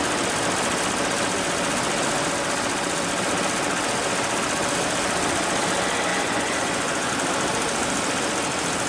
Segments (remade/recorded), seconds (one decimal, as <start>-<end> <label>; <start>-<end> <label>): 0.0-6.1 recorded; 6.1-7.1 remade; 7.1-8.9 recorded